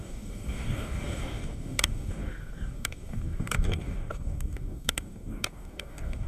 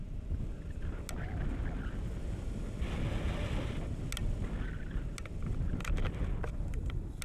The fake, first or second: first